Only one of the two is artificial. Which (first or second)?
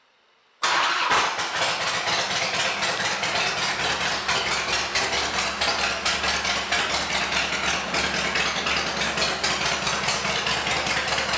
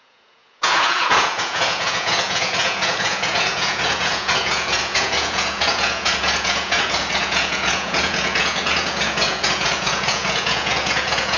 second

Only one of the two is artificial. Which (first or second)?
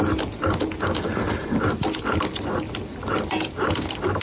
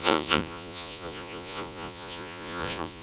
second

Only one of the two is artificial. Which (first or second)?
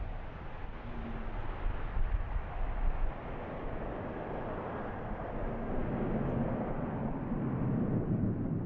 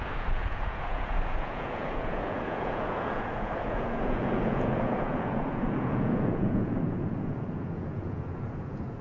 second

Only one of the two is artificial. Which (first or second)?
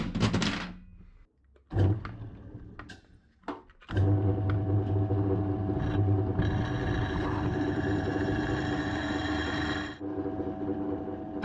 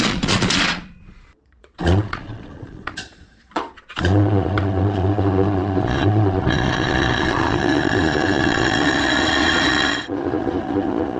second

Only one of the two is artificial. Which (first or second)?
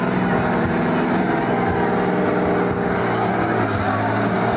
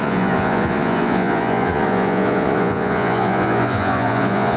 second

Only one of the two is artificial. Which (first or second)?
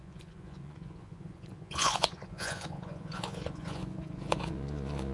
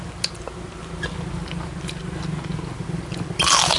first